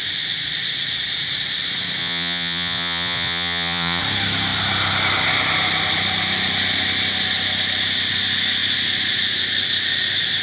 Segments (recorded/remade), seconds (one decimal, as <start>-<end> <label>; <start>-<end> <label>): 0.0-2.0 recorded; 2.0-4.0 remade; 4.0-10.4 recorded